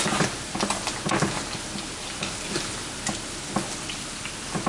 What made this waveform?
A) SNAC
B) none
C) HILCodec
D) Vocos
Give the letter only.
B